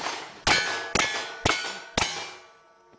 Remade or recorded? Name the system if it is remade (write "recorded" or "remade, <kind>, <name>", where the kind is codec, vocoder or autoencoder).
recorded